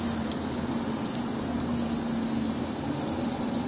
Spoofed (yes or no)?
no